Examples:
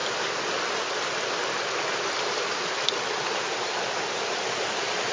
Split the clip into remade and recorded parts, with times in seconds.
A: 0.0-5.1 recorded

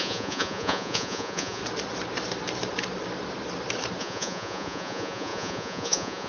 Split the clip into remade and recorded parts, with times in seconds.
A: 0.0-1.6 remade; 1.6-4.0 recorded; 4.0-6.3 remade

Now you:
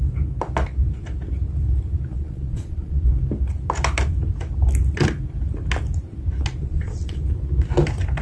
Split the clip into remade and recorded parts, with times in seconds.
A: 0.0-2.1 recorded; 2.1-3.1 remade; 3.1-6.6 recorded; 6.6-7.2 remade; 7.2-8.2 recorded

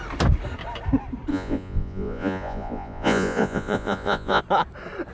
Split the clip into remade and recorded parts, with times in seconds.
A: 0.0-1.3 recorded; 1.3-4.4 remade; 4.4-5.1 recorded

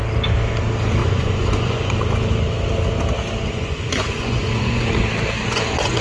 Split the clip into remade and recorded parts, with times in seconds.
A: 0.0-1.0 recorded; 1.0-1.9 remade; 1.9-3.4 recorded; 3.4-4.9 remade; 4.9-5.4 recorded; 5.4-6.0 remade

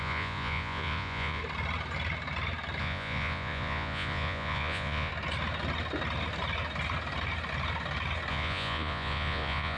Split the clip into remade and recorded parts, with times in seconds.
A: 0.0-1.4 remade; 1.4-2.8 recorded; 2.8-5.1 remade; 5.1-8.3 recorded; 8.3-9.8 remade